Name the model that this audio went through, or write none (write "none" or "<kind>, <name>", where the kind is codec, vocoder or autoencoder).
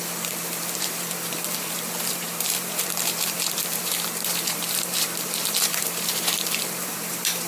vocoder, BigVGAN v2